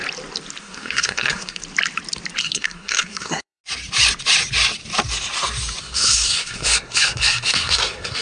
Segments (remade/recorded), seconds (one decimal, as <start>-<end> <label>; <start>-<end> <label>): 0.0-0.6 recorded; 0.6-1.6 remade; 1.6-2.4 recorded; 2.4-3.6 remade; 3.6-5.8 recorded; 5.8-8.2 remade